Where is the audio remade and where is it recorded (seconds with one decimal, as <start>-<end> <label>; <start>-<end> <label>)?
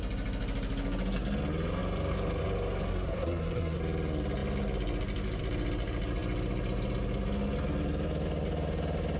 0.0-2.9 recorded; 2.9-3.8 remade; 3.8-9.2 recorded